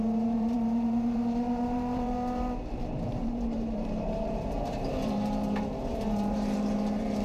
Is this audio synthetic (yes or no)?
yes